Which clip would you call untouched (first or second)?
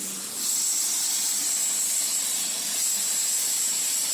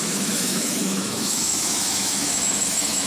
first